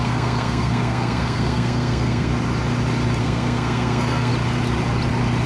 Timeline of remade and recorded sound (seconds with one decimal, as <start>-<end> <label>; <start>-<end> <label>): 0.0-2.3 remade; 2.3-3.2 recorded; 3.2-4.3 remade; 4.3-5.5 recorded